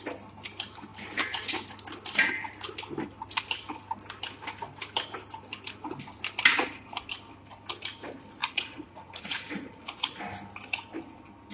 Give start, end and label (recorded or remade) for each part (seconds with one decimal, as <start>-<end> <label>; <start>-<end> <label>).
0.0-8.4 recorded; 8.4-10.2 remade; 10.2-11.5 recorded